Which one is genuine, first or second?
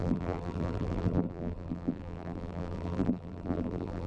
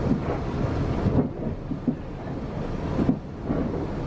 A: second